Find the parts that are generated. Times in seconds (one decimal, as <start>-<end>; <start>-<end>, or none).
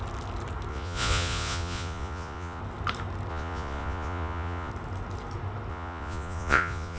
0.7-2.6; 3.3-4.7; 5.7-7.0